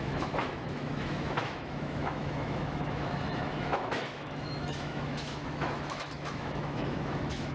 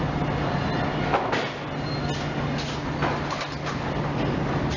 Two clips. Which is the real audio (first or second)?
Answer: second